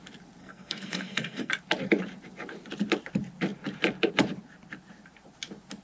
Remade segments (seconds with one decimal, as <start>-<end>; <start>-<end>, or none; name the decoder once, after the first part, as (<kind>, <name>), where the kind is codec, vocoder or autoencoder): 0.4-1.5 (codec, SNAC)